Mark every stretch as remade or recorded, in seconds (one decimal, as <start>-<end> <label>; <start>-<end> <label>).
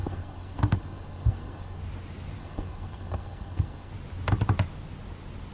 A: 0.0-1.8 remade; 1.8-2.4 recorded; 2.4-3.9 remade; 3.9-5.5 recorded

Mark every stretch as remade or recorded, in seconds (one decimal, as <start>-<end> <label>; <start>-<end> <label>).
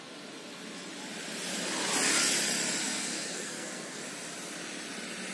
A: 0.0-2.8 recorded; 2.8-4.0 remade; 4.0-5.3 recorded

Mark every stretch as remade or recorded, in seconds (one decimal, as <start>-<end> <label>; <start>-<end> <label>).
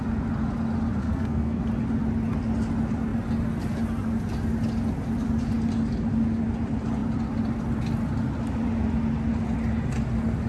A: 0.0-1.0 recorded; 1.0-1.6 remade; 1.6-10.5 recorded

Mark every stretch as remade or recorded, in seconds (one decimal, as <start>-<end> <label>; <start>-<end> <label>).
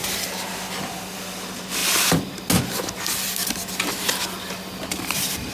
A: 0.0-5.5 recorded